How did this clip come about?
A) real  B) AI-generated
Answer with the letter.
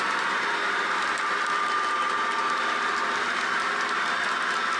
A